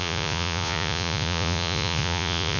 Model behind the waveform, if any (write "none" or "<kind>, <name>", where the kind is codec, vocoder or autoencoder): vocoder, Vocos